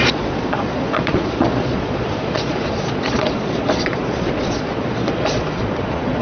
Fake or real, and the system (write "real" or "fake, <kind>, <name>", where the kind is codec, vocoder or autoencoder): fake, vocoder, Vocos